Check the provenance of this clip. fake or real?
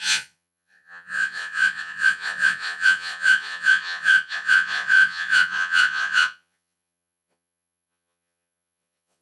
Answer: fake